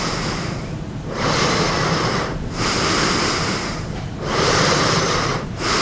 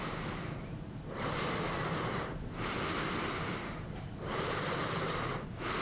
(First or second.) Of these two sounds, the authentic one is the second